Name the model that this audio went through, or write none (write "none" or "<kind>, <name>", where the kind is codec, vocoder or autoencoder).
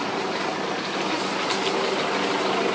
none